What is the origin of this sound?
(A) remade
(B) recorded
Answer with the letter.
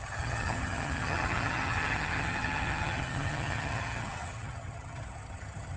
A